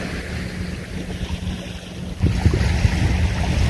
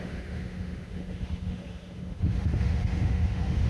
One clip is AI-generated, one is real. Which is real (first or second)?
first